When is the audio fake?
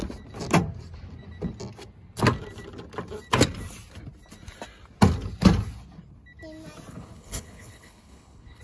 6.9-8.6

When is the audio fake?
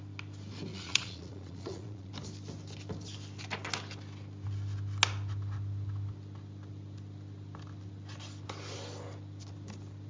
0.7-2.1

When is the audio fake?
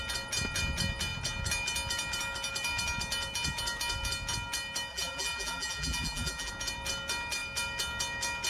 4.9-6.5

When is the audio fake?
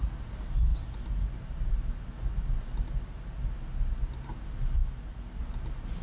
none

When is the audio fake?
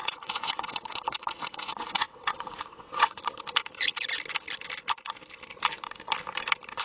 0.0-3.2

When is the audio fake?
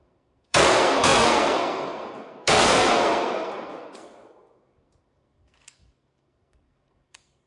0.0-7.5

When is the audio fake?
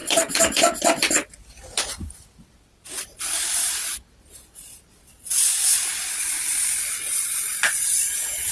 0.0-5.1; 5.9-7.5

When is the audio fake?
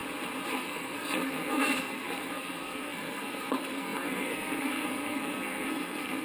0.5-6.2